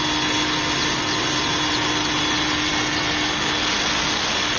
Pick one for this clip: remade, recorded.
recorded